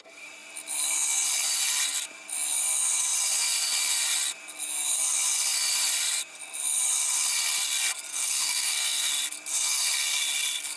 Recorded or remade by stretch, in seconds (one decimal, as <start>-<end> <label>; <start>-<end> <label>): 0.0-8.1 recorded; 8.1-9.1 remade; 9.1-10.8 recorded